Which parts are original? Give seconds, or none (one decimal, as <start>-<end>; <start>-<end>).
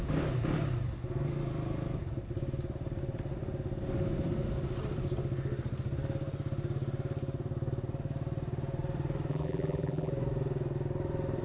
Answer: 0.0-9.3; 10.1-11.4